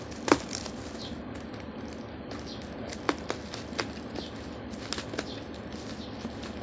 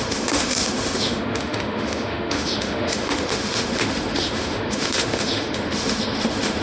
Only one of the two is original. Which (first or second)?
first